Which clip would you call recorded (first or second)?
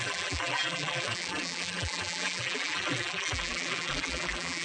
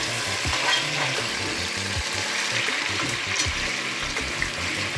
second